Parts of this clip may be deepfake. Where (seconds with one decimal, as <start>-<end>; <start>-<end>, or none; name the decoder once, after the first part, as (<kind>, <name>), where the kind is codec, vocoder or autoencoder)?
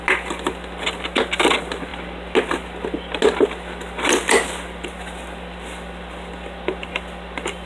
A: none